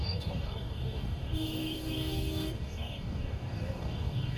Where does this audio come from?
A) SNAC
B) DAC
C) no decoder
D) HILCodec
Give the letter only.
B